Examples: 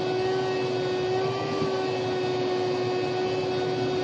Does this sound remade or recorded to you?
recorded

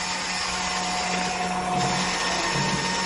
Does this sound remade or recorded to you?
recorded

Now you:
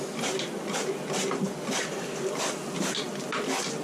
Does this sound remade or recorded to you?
recorded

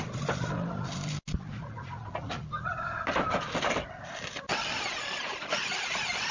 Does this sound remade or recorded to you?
recorded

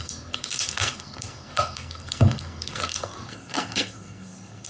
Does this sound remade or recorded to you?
remade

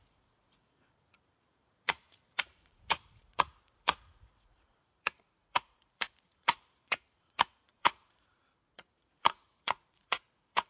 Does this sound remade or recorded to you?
remade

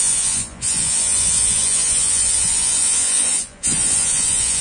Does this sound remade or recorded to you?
remade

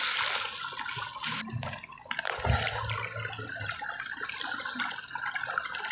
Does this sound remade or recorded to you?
recorded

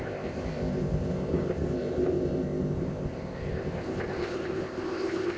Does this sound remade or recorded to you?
remade